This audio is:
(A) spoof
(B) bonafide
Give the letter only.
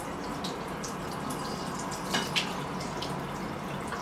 B